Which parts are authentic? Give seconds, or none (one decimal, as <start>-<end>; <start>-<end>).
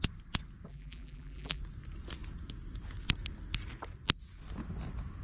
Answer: 0.0-0.7; 1.6-5.2